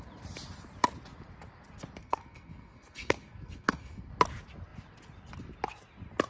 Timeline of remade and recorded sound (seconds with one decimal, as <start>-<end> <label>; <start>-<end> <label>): 0.0-2.0 recorded; 2.0-4.1 remade; 4.1-6.3 recorded